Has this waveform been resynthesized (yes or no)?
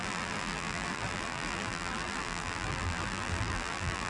yes